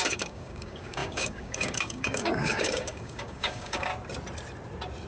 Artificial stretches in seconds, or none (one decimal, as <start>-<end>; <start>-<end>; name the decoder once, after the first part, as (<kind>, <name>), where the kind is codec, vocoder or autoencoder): 0.0-3.9 (codec, DAC)